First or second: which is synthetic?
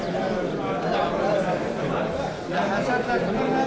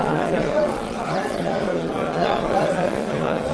second